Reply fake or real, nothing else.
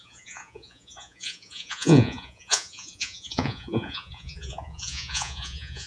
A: fake